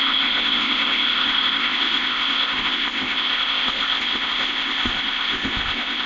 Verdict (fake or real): fake